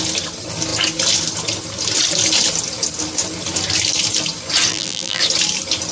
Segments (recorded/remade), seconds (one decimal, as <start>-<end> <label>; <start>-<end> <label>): 0.0-4.7 recorded; 4.7-5.2 remade; 5.2-5.9 recorded